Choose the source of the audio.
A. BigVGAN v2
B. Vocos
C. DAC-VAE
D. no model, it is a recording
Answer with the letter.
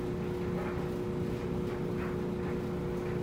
D